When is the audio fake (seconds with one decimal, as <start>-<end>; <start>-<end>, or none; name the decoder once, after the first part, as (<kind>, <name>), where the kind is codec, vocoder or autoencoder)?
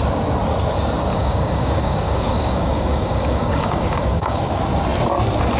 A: 1.1-4.5 (codec, DAC)